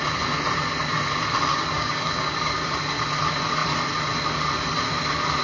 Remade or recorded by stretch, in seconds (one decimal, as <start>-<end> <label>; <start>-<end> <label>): 0.0-1.5 recorded; 1.5-2.7 remade; 2.7-5.4 recorded

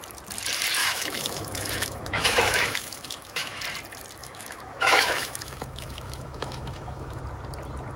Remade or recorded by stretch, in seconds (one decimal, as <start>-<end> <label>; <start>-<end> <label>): 0.0-0.8 recorded; 0.8-3.6 remade; 3.6-4.2 recorded; 4.2-7.2 remade; 7.2-8.0 recorded

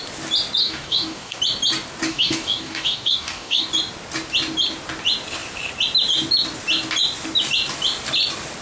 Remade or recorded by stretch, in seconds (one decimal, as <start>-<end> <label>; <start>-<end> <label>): 0.0-0.6 recorded; 0.6-1.4 remade; 1.4-2.1 recorded; 2.1-3.7 remade; 3.7-8.6 recorded

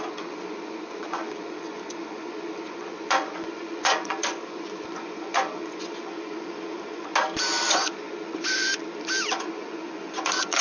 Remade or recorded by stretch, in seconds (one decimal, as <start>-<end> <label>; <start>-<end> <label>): 0.0-7.1 remade; 7.1-7.8 recorded; 7.8-8.8 remade; 8.8-9.4 recorded; 9.4-10.6 remade

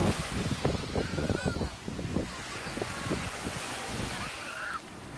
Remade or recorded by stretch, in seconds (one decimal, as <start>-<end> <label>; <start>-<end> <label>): 0.0-0.6 remade; 0.6-1.1 recorded; 1.1-4.2 remade; 4.2-5.2 recorded

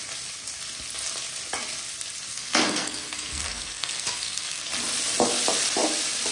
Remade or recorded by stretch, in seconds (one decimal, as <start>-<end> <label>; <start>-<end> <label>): 0.0-2.3 recorded; 2.3-4.6 remade; 4.6-6.3 recorded

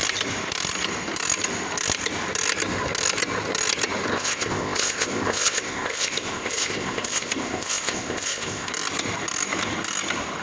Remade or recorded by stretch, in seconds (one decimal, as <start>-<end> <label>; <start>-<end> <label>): 0.0-4.1 recorded; 4.1-8.7 remade; 8.7-10.4 recorded

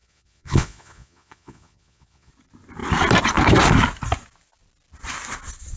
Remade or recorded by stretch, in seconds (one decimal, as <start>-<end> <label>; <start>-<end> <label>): 0.0-2.3 remade; 2.3-5.8 recorded